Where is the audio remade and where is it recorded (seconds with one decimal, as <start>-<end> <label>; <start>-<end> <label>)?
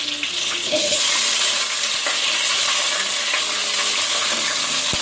0.0-0.4 recorded; 0.4-1.0 remade; 1.0-5.0 recorded